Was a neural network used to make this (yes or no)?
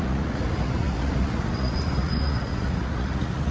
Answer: yes